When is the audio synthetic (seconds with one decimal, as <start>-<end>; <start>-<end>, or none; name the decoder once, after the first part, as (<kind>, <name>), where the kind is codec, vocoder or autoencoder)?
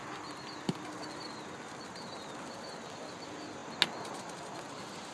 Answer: none